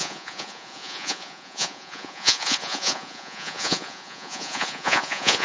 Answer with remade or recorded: remade